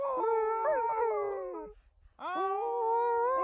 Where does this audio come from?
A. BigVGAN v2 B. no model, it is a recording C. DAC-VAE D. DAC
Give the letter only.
B